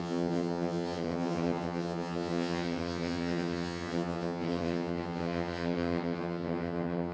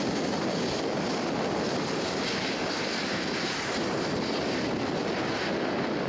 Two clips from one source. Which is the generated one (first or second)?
first